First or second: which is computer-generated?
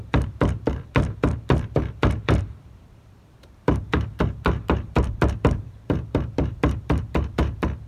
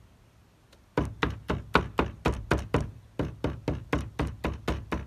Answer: first